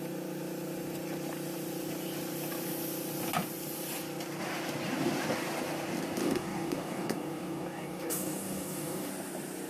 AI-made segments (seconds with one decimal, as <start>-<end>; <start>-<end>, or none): 6.2-9.1